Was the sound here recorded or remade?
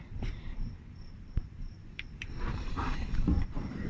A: remade